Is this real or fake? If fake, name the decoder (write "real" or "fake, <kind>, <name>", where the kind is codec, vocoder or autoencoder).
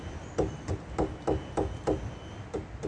real